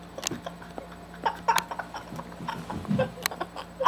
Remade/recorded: recorded